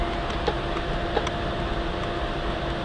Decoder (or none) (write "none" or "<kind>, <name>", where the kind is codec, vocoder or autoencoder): none